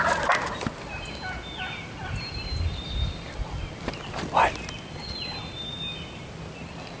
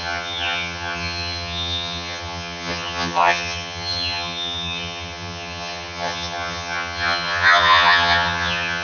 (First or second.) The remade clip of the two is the second